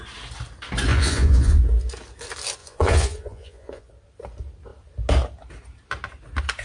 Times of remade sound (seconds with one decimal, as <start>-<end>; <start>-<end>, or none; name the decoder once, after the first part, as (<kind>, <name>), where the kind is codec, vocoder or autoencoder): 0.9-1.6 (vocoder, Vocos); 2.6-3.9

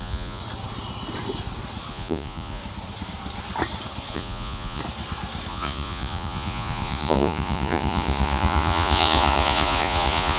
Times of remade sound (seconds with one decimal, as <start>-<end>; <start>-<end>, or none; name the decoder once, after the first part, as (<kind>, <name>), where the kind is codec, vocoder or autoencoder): 0.0-0.4 (vocoder, Vocos); 1.9-2.6; 4.1-4.8; 5.5-10.4

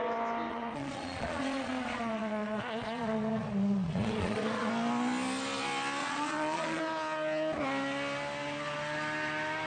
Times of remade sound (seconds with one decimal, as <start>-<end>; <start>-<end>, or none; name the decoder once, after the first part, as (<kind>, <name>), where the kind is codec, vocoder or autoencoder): 0.5-4.7 (vocoder, Vocos); 6.0-6.8

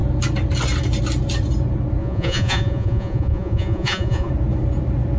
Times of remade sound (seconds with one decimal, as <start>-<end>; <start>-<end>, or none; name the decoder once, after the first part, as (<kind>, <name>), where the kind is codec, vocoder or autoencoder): 2.0-4.3 (vocoder, Vocos)